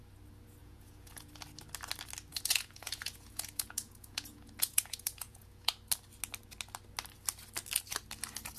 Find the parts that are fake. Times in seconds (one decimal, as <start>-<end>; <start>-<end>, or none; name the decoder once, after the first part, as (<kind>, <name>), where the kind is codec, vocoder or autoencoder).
0.6-1.3 (vocoder, Vocos); 2.3-5.7